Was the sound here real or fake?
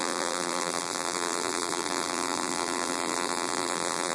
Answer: fake